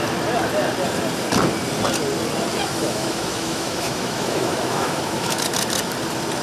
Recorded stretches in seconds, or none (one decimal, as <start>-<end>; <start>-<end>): 0.0-2.6; 5.4-6.4